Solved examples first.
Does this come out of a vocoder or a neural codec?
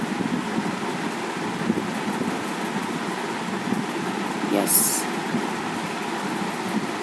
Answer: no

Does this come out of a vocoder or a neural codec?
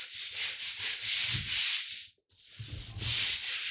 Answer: no